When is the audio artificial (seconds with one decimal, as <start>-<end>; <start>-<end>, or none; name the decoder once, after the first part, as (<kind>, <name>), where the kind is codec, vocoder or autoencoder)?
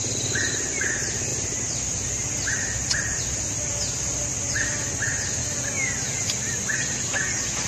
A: none